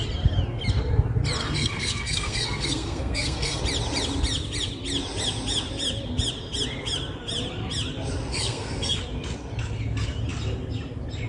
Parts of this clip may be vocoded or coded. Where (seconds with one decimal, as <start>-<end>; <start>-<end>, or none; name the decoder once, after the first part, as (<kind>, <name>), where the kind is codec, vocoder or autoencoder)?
1.4-3.6 (codec, SNAC); 8.3-9.0